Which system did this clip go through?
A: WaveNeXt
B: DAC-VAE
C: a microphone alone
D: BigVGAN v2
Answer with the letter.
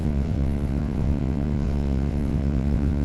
A